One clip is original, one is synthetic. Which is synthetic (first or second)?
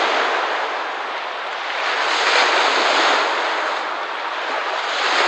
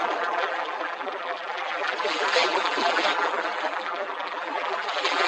second